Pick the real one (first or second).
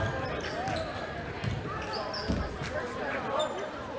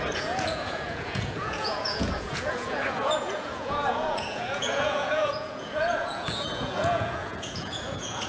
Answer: first